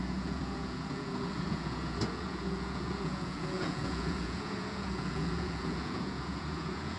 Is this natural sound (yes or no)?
no